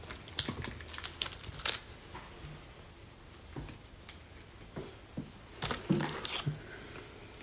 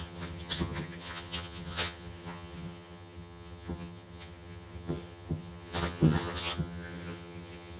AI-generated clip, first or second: second